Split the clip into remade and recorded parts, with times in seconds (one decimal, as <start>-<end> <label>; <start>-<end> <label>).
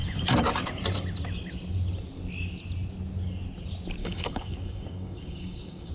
0.0-4.0 recorded; 4.0-5.9 remade